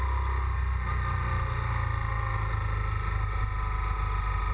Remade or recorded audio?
recorded